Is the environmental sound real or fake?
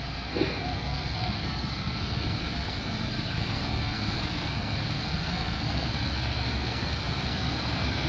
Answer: fake